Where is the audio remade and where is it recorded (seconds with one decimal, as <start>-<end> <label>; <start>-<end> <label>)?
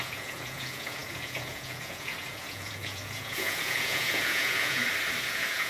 0.0-4.8 remade; 4.8-5.3 recorded; 5.3-5.7 remade